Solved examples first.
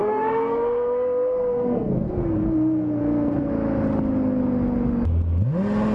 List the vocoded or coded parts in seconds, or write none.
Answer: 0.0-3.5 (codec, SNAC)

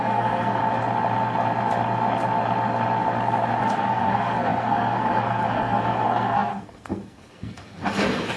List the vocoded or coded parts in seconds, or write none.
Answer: 0.0-0.6 (codec, SNAC); 3.6-8.4

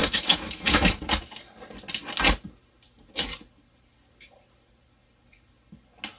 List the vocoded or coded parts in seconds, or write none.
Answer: 0.0-1.0 (autoencoder, DAC-VAE)

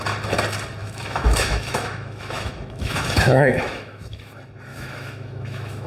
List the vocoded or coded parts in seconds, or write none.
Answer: 0.8-4.3 (autoencoder, DAC-VAE); 4.7-5.9

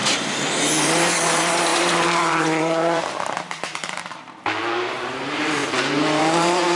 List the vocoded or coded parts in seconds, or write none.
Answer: 0.0-5.6 (vocoder, BigVGAN v2); 6.2-6.8

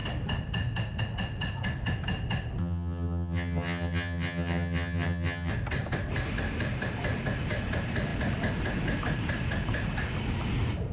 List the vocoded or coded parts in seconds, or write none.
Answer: 2.6-5.5 (vocoder, HiFi-GAN)

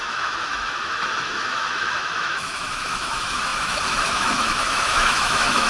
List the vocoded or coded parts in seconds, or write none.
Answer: 0.0-5.7 (autoencoder, DAC-VAE)